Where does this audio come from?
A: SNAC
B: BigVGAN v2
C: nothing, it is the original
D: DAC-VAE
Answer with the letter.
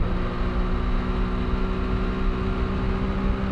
C